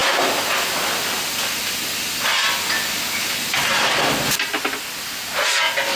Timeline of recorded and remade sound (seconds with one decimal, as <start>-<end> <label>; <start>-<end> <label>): 0.0-6.0 recorded